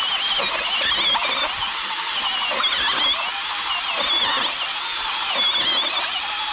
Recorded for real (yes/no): yes